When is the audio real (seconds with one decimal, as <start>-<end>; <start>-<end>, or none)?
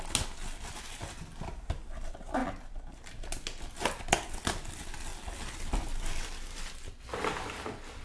0.0-8.0